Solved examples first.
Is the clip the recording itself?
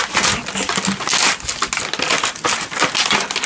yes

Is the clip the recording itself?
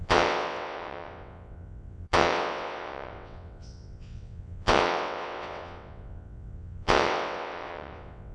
no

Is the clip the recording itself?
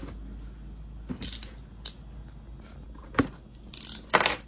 yes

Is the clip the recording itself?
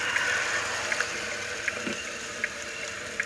yes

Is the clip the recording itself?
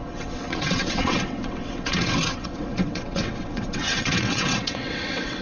no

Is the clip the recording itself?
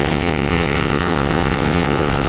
no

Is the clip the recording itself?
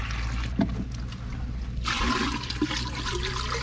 yes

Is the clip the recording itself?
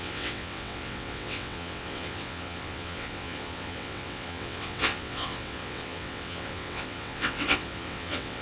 no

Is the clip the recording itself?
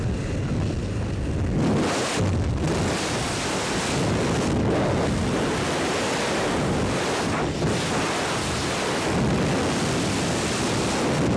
yes